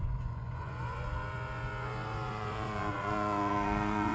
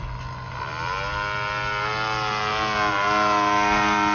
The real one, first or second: second